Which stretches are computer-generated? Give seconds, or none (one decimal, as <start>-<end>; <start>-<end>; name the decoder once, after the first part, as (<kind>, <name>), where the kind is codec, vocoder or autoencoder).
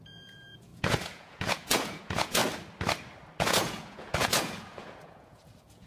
0.0-2.4 (vocoder, Vocos); 3.4-5.9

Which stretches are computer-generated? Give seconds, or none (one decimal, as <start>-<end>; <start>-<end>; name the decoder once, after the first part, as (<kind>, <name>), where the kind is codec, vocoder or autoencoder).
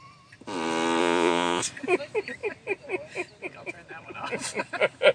1.0-1.6 (vocoder, Vocos)